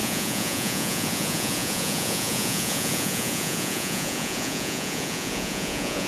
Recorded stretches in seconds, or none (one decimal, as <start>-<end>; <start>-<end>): none